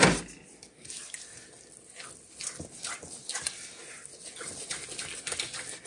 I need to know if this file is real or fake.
real